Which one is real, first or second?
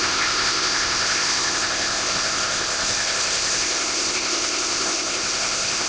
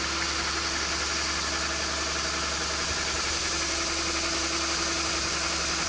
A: second